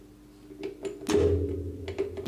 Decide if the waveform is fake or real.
real